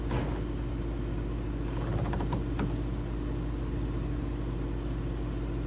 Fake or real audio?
real